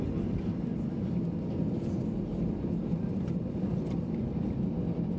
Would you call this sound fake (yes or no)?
no